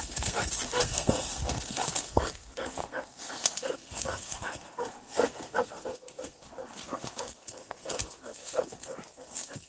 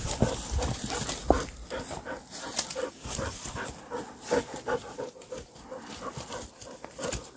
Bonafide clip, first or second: second